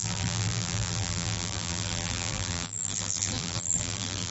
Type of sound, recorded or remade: remade